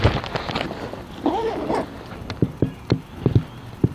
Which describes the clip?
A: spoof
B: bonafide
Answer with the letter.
B